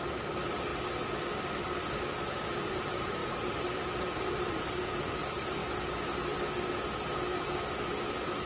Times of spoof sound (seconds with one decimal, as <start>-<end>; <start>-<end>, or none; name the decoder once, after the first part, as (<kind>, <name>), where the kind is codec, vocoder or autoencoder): 0.0-0.7 (vocoder, BigVGAN v2); 2.3-5.6